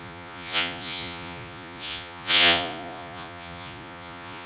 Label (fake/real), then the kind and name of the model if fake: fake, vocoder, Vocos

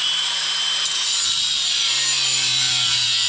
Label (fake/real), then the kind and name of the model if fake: fake, vocoder, BigVGAN v2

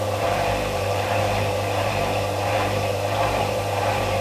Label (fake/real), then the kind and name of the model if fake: fake, vocoder, BigVGAN v2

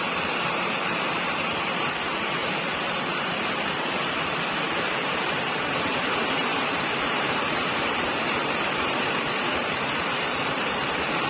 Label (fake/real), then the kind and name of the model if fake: fake, vocoder, BigVGAN v2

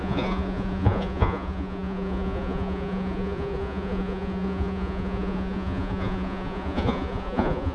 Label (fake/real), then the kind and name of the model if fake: fake, vocoder, Vocos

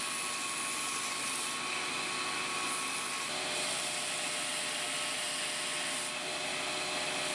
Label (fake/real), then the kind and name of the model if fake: real